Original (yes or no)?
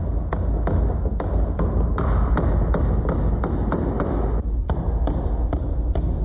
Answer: yes